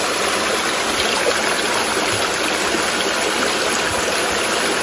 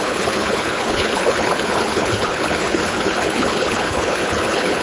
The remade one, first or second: second